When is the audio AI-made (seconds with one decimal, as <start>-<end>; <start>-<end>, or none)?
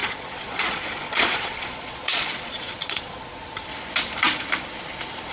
0.0-3.2